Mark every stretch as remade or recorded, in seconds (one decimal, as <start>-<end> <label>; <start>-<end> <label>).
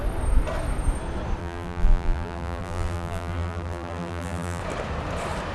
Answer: 0.0-1.4 recorded; 1.4-4.6 remade; 4.6-5.5 recorded